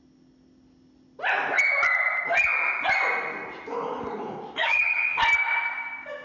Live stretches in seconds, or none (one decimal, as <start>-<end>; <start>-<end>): 0.0-4.6; 5.2-6.2